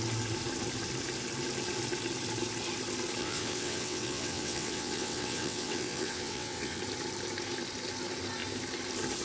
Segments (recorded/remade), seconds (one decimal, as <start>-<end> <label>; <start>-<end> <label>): 0.0-3.2 recorded; 3.2-6.8 remade; 6.8-9.2 recorded